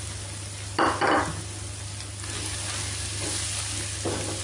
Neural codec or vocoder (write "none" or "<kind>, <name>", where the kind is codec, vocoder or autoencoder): none